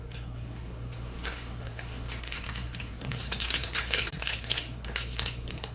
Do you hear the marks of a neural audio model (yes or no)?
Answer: yes